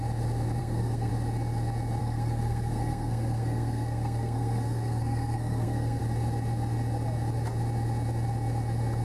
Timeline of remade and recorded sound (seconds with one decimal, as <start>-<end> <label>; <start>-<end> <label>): 0.0-0.6 recorded; 0.6-1.1 remade; 1.1-2.0 recorded; 2.0-6.0 remade; 6.0-9.0 recorded